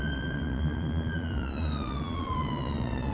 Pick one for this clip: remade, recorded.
remade